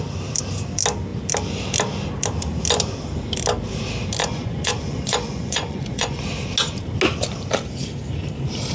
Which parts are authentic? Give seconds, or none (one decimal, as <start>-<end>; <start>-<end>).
0.0-4.2; 6.2-8.7